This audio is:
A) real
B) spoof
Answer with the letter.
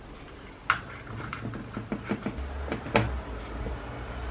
A